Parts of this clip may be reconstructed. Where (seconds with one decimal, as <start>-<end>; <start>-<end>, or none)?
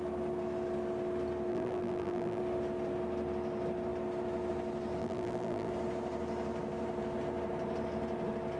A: 1.5-2.4; 5.0-5.7